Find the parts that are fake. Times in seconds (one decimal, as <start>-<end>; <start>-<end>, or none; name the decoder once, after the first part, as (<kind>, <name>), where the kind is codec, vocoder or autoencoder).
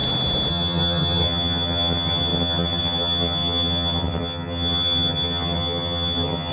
0.5-6.5 (vocoder, HiFi-GAN)